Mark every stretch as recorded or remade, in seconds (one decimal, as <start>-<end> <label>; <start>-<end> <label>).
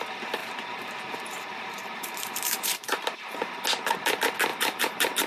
0.0-0.4 recorded; 0.4-3.6 remade; 3.6-4.5 recorded; 4.5-5.3 remade